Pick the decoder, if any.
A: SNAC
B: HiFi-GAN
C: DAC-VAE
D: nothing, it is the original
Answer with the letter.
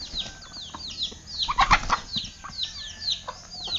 D